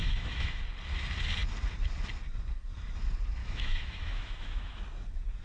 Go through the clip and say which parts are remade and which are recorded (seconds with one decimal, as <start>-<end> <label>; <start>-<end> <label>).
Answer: 0.0-0.6 remade; 0.6-3.4 recorded; 3.4-4.8 remade; 4.8-5.4 recorded